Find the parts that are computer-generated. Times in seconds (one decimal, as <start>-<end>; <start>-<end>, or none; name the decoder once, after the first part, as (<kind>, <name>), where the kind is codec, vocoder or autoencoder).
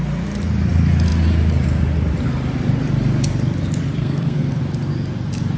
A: 4.0-4.6 (codec, SNAC)